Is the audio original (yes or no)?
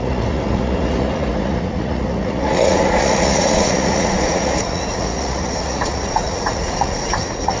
no